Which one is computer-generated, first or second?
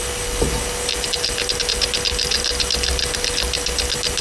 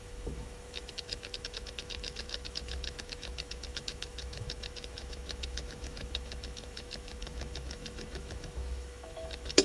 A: second